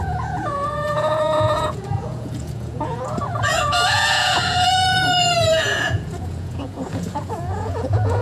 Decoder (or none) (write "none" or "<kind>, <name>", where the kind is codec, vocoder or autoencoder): vocoder, Vocos